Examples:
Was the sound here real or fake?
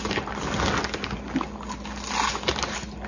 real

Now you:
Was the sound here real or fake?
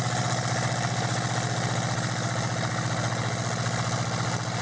real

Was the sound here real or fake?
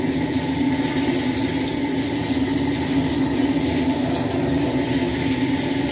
real